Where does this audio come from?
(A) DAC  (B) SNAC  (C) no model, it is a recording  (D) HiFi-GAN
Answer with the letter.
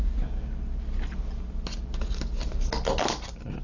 C